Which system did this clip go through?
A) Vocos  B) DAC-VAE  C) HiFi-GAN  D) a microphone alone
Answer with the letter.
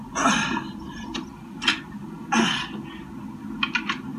D